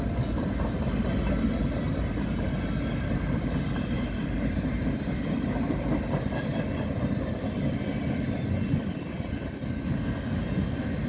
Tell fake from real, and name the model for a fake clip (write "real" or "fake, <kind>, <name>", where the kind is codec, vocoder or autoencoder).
real